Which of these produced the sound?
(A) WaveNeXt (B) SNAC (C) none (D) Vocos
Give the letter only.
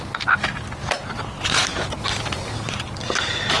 C